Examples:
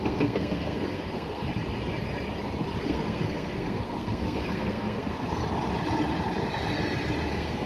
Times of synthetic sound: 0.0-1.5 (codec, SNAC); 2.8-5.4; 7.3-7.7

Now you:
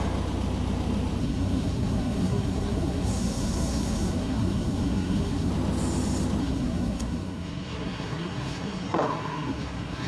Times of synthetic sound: 1.2-5.5 (codec, SNAC); 6.4-10.1

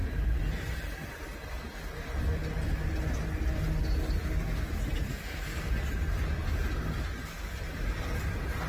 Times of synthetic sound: 5.1-5.7 (codec, SNAC)

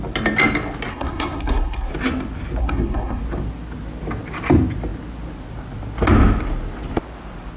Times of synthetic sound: 0.9-1.9 (codec, SNAC); 2.6-3.2

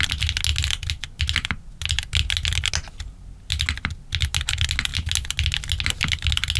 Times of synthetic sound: none

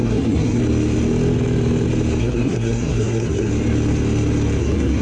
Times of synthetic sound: 0.0-0.6 (codec, SNAC); 2.2-3.5; 4.6-5.0

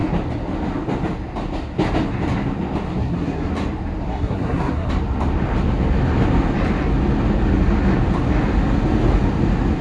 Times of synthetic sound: 3.0-3.5 (codec, SNAC); 4.1-4.9